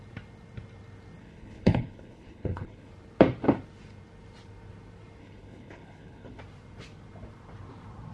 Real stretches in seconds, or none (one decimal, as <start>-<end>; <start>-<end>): 0.0-1.2; 2.9-5.2; 6.4-8.1